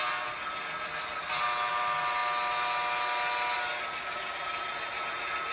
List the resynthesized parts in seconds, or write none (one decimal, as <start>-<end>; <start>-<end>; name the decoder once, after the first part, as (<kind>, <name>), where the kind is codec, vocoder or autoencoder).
none